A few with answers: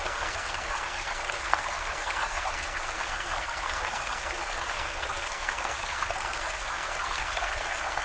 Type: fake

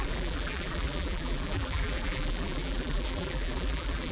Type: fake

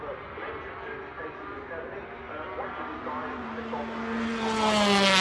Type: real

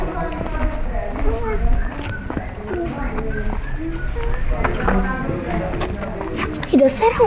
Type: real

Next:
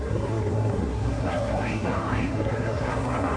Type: fake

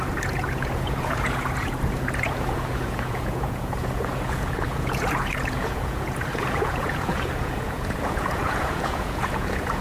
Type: fake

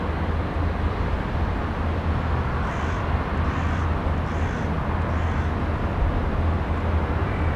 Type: real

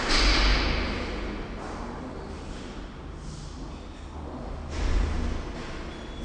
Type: real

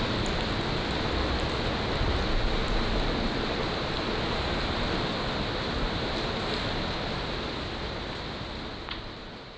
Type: real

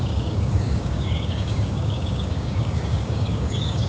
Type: fake